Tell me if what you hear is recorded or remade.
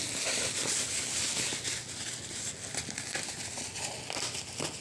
recorded